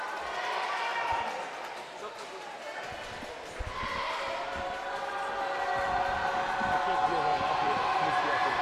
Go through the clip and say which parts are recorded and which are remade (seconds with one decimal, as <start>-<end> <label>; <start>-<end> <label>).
0.0-7.3 recorded; 7.3-8.6 remade